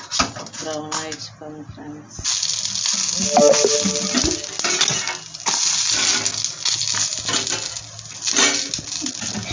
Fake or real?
real